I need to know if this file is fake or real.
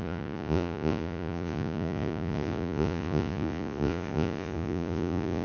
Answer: fake